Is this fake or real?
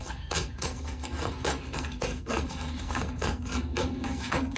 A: fake